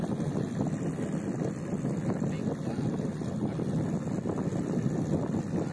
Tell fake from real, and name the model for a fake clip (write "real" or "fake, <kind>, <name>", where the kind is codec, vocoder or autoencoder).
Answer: real